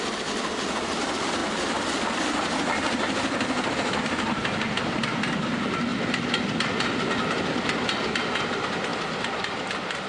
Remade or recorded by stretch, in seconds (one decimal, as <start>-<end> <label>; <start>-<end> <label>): 0.0-10.1 recorded